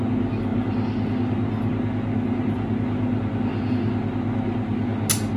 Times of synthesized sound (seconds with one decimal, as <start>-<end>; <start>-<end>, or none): none